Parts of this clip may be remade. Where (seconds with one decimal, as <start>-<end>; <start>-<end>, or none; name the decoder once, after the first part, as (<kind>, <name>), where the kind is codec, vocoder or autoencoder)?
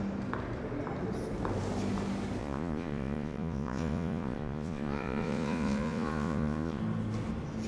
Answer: 2.4-6.8 (vocoder, Vocos)